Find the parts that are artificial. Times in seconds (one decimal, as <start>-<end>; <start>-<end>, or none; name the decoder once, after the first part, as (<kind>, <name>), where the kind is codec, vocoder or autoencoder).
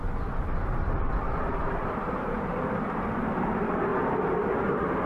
0.0-5.1 (vocoder, BigVGAN v2)